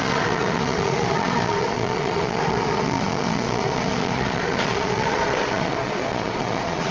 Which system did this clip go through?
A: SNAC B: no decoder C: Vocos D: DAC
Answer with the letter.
C